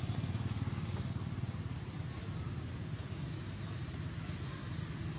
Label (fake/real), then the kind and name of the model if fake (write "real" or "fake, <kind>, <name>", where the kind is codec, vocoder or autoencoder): real